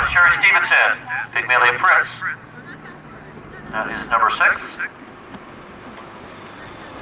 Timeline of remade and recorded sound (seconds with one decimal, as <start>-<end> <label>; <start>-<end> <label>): 0.0-7.0 recorded